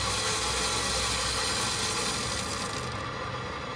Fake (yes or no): no